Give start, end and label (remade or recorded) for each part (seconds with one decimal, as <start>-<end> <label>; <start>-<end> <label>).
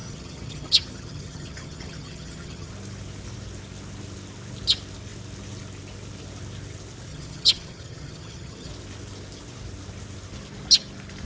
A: 0.0-2.7 remade; 2.7-7.1 recorded; 7.1-8.7 remade; 8.7-11.2 recorded